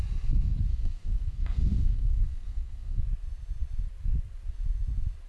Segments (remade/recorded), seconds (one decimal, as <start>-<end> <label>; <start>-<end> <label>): 0.0-0.7 recorded; 0.7-3.0 remade; 3.0-5.3 recorded